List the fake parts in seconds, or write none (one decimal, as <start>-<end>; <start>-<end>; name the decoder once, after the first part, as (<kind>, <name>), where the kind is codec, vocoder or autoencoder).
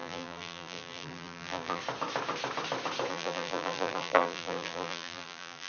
0.0-1.8 (vocoder, BigVGAN v2); 3.1-5.7